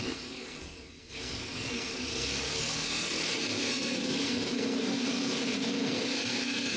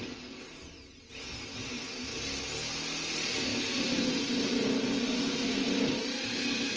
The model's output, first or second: first